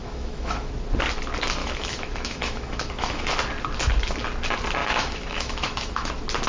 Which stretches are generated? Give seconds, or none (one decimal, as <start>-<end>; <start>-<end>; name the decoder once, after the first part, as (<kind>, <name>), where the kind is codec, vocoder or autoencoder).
0.0-0.7 (autoencoder, DAC-VAE); 1.6-3.3; 4.8-6.1